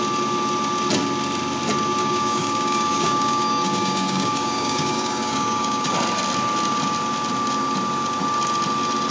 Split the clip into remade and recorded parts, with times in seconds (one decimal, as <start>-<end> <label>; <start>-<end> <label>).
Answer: 0.0-2.0 recorded; 2.0-5.9 remade; 5.9-9.1 recorded